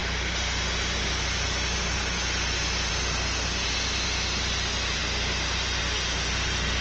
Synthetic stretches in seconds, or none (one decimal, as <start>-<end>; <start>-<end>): none